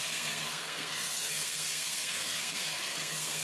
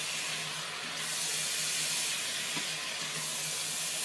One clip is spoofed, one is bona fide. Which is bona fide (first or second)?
second